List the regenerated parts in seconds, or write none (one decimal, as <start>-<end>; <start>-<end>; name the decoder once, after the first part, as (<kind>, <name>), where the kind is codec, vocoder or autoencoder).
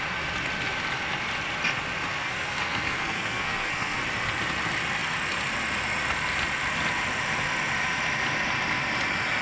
2.2-4.0 (codec, SNAC)